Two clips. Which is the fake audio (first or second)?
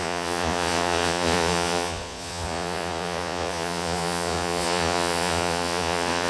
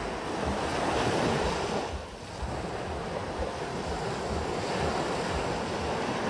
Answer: first